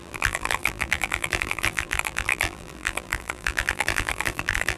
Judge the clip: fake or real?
fake